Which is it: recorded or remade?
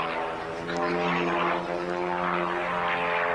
recorded